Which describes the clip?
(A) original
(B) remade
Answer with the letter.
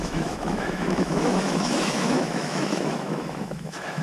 B